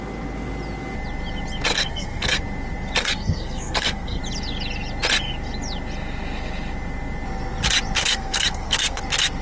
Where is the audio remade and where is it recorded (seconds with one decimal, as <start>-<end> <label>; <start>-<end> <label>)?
0.0-1.7 recorded; 1.7-2.4 remade; 2.4-3.0 recorded; 3.0-4.2 remade; 4.2-8.0 recorded; 8.0-9.0 remade; 9.0-9.4 recorded

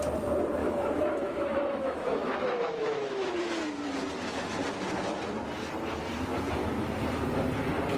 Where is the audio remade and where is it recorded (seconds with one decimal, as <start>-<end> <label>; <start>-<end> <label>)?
0.0-0.6 recorded; 0.6-3.3 remade; 3.3-8.0 recorded

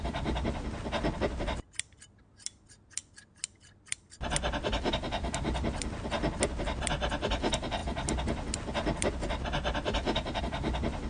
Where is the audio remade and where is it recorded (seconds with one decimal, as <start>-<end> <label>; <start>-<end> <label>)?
0.0-11.1 recorded

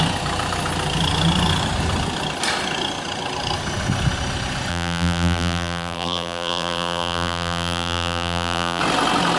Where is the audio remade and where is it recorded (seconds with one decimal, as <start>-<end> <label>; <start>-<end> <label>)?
0.0-4.7 recorded; 4.7-8.8 remade; 8.8-9.4 recorded